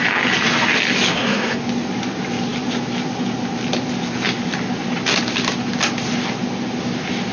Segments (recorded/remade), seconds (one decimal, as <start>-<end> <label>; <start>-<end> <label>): 0.0-1.1 recorded; 1.1-1.6 remade; 1.6-7.3 recorded

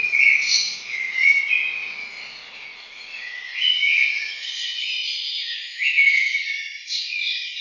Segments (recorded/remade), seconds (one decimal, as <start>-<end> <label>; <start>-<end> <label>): 0.0-4.7 remade; 4.7-6.3 recorded; 6.3-7.6 remade

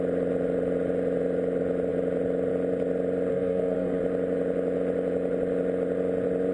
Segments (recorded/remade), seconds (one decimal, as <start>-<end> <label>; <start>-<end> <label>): 0.0-3.3 recorded; 3.3-4.0 remade; 4.0-6.5 recorded

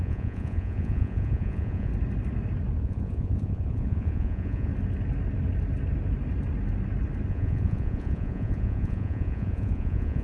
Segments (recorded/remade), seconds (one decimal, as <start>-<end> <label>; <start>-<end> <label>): 0.0-1.9 remade; 1.9-2.8 recorded; 2.8-4.7 remade; 4.7-7.3 recorded; 7.3-10.2 remade

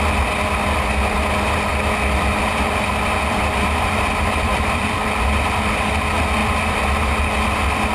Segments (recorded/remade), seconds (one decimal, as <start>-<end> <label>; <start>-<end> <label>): 0.0-1.7 recorded; 1.7-5.9 remade; 5.9-6.4 recorded; 6.4-6.9 remade; 6.9-7.9 recorded